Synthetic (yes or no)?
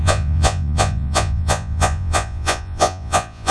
yes